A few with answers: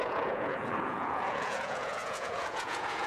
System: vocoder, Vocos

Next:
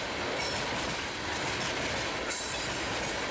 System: none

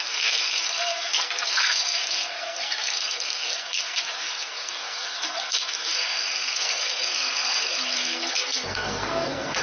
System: codec, SNAC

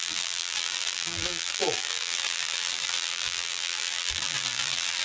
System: vocoder, BigVGAN v2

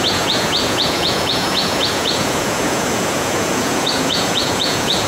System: vocoder, Vocos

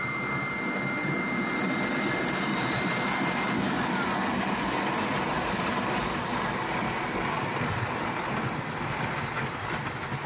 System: none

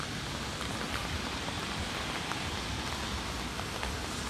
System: vocoder, BigVGAN v2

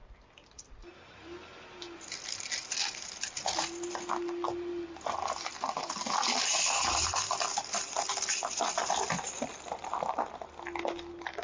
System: none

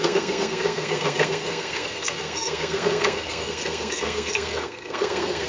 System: codec, SNAC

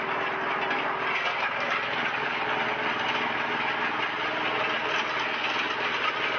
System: none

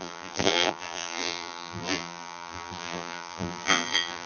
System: vocoder, BigVGAN v2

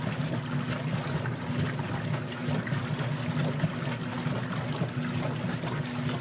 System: none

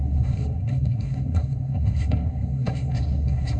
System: codec, SNAC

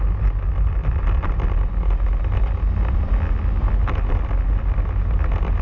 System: none